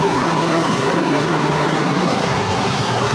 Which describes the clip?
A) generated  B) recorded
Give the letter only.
A